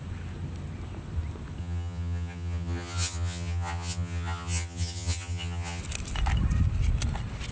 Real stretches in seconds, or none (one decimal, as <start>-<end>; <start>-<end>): 0.0-1.6; 5.8-7.5